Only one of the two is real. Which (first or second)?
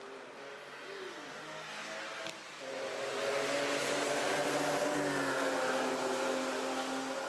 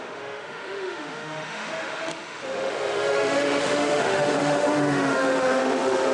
first